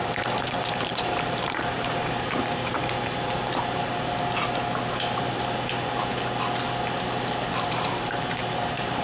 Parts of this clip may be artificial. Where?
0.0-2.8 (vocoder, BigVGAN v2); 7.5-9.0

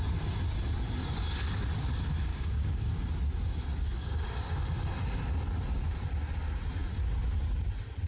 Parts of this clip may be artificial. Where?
2.3-2.9 (codec, DAC); 3.9-4.5

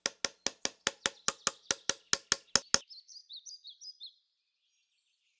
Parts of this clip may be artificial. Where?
3.2-4.2 (vocoder, BigVGAN v2)